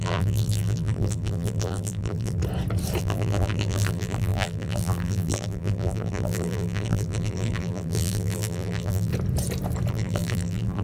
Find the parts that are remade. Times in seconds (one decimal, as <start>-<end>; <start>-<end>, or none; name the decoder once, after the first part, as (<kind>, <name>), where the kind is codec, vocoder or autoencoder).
0.0-2.4 (vocoder, BigVGAN v2); 3.0-9.1; 9.9-10.8